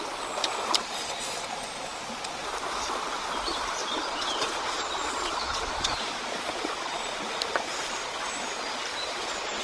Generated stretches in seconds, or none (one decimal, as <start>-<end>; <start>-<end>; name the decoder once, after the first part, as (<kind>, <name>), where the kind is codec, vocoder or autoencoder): 3.8-6.9 (vocoder, Vocos); 8.9-9.6